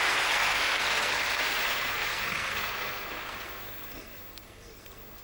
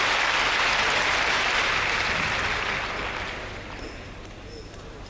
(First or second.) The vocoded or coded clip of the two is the first